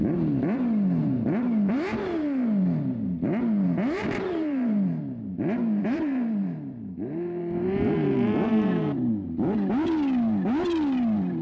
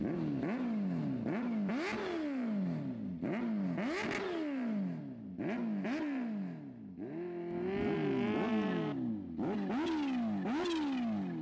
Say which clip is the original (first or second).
second